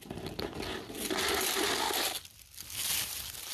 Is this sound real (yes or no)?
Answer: yes